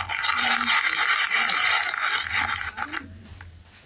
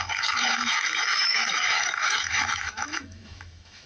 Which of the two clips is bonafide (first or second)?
first